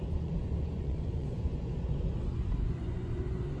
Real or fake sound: fake